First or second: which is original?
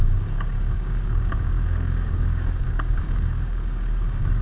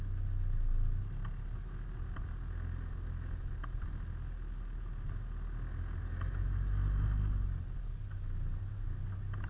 second